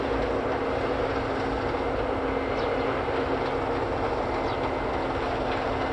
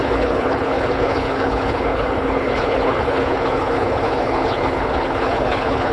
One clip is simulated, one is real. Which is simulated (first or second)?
second